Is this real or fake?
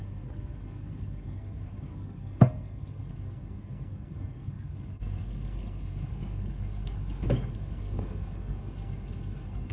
fake